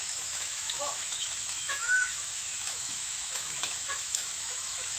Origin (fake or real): fake